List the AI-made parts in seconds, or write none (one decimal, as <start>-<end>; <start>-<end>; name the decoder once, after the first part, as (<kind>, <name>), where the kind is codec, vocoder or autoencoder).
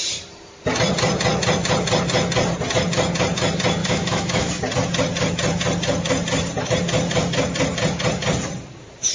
3.8-4.5 (autoencoder, DAC-VAE)